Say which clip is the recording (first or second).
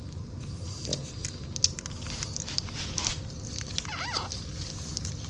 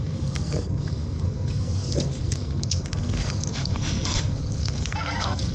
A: first